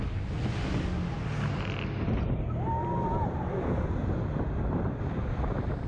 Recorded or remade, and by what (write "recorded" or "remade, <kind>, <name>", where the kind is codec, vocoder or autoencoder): recorded